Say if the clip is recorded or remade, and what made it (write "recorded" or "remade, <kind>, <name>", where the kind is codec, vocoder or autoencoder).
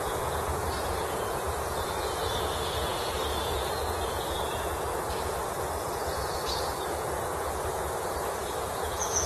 remade, vocoder, Vocos